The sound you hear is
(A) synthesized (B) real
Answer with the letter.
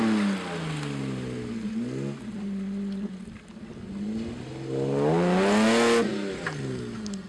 B